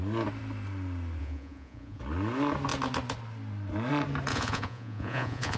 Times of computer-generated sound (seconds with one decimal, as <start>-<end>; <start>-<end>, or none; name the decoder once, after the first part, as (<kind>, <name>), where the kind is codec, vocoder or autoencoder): 1.2-2.0 (vocoder, Vocos); 4.3-5.6